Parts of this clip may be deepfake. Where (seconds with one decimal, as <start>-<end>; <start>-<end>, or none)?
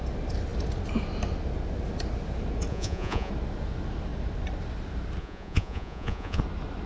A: 2.7-3.3; 5.2-6.4